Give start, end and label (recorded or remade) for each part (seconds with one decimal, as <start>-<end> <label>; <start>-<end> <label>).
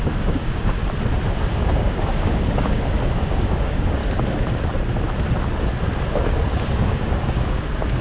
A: 0.0-0.8 remade; 0.8-1.4 recorded; 1.4-4.0 remade; 4.0-6.6 recorded; 6.6-8.0 remade